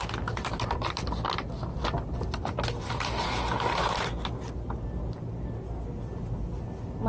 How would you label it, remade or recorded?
recorded